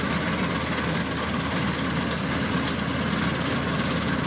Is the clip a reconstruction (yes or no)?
no